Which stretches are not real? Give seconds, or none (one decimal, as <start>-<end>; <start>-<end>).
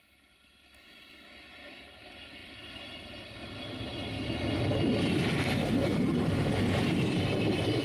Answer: 5.6-6.3